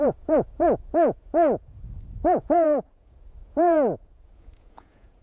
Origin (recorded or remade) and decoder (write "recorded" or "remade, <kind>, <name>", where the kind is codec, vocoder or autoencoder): remade, vocoder, Vocos